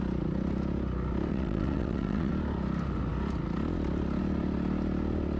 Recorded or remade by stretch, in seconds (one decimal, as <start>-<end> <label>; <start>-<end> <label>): 0.0-1.3 recorded; 1.3-2.3 remade; 2.3-5.4 recorded